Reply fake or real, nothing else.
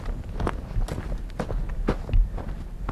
real